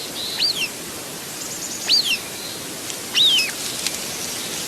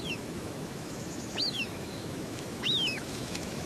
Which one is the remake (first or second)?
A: second